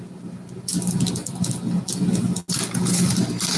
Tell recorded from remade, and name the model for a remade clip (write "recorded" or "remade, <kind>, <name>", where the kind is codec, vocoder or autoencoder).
recorded